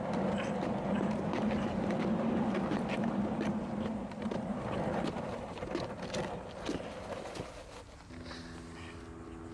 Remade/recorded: recorded